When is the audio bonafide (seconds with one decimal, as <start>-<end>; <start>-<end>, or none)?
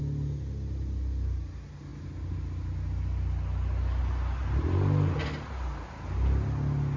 0.0-7.0